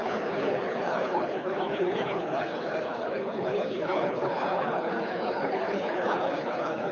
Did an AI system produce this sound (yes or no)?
yes